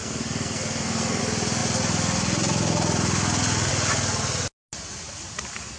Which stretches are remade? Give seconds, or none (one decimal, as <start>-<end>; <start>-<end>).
0.0-1.2